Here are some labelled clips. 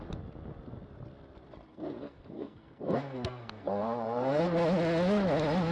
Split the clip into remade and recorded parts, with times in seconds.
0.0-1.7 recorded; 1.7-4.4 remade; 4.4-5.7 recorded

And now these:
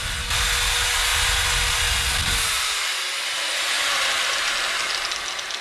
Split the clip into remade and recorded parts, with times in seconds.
0.0-5.6 recorded

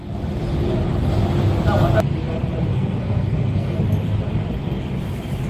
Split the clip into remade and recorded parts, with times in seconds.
0.0-2.7 recorded; 2.7-3.8 remade; 3.8-5.5 recorded

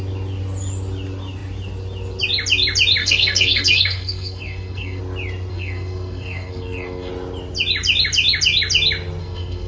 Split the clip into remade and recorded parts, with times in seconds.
0.0-3.0 recorded; 3.0-5.0 remade; 5.0-5.5 recorded; 5.5-7.1 remade; 7.1-9.2 recorded; 9.2-9.7 remade